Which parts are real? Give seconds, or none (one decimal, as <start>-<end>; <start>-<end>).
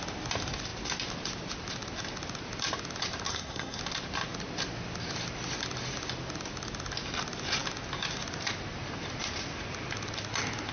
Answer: 0.0-3.3; 3.8-10.7